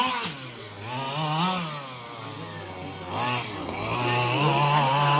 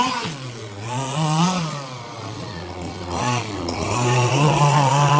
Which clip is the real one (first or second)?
first